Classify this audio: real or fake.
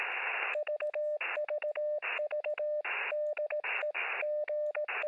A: real